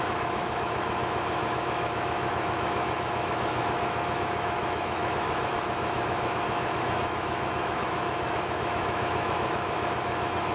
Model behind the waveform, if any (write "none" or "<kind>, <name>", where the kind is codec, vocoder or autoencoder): autoencoder, DAC-VAE